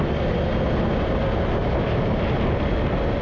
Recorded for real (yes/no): yes